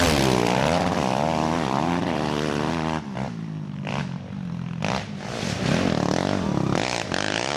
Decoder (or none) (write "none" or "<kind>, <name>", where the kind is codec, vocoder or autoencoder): none